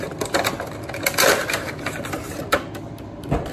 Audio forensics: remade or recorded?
recorded